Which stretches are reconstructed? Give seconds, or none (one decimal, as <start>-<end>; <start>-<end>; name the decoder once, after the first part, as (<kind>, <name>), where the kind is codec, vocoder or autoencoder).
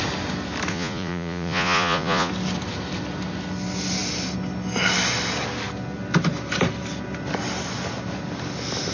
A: 0.7-2.3 (vocoder, Vocos)